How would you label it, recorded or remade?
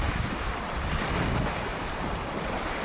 recorded